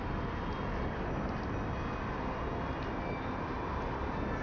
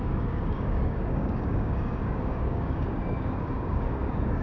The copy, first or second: second